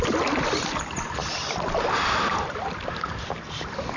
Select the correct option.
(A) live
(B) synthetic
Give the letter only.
A